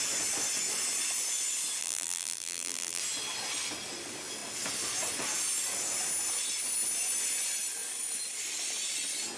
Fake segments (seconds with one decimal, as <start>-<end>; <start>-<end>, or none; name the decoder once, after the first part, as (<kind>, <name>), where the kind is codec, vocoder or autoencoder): 1.8-3.0 (vocoder, BigVGAN v2)